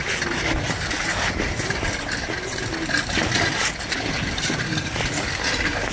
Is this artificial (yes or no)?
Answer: no